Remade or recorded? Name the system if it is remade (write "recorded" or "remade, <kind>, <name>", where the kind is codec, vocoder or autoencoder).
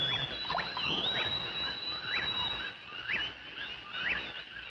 recorded